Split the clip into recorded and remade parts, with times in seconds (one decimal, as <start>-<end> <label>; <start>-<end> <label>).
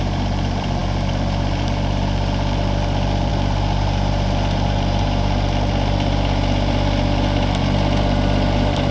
0.0-8.9 remade